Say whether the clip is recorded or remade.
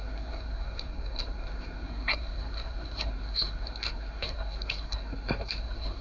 remade